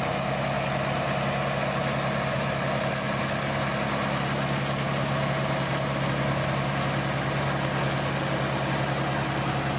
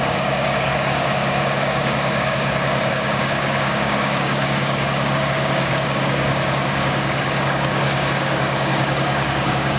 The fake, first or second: second